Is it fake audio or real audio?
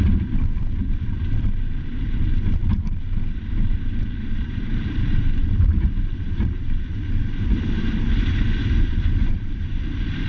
fake